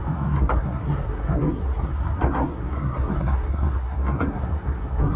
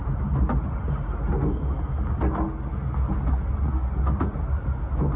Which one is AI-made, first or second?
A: first